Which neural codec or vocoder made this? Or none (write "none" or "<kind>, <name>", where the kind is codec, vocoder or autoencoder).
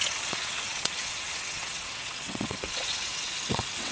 vocoder, WaveNeXt